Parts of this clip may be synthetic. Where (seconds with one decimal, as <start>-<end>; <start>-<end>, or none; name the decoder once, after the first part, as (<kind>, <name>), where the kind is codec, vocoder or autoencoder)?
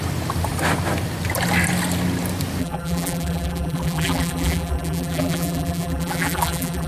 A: 2.6-6.9 (vocoder, BigVGAN v2)